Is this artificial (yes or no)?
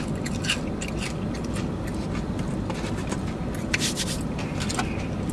no